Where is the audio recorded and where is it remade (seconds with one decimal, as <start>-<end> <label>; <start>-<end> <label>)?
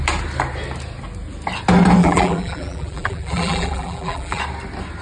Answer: 0.0-2.0 recorded; 2.0-4.4 remade; 4.4-5.0 recorded